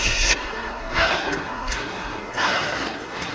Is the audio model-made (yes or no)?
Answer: yes